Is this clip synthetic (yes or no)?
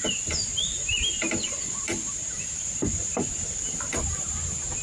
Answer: yes